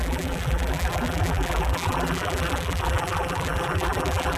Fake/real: fake